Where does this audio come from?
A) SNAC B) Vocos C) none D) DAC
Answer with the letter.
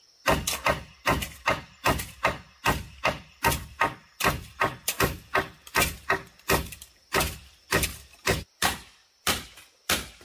C